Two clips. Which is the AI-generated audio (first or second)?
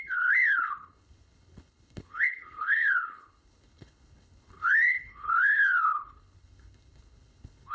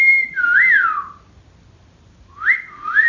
first